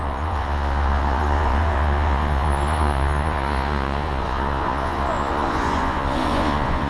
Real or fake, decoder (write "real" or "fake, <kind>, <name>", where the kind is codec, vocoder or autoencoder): fake, vocoder, Vocos